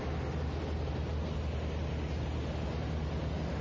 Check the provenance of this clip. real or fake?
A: real